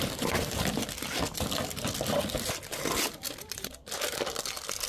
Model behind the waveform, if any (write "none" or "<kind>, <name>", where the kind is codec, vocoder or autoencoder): vocoder, BigVGAN v2